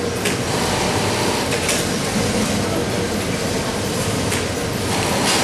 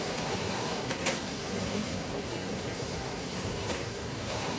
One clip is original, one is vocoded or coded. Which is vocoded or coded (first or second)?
second